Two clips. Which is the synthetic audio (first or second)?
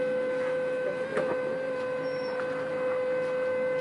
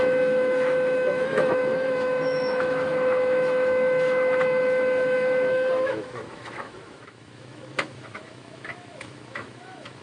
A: second